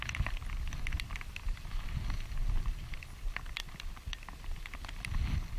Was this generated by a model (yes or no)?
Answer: no